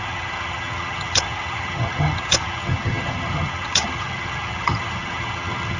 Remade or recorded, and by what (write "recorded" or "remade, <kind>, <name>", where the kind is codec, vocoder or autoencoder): remade, vocoder, HiFi-GAN